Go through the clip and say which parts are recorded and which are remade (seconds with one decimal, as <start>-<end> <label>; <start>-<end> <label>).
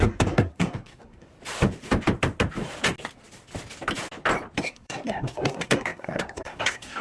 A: 0.0-1.3 remade; 1.3-4.6 recorded; 4.6-7.0 remade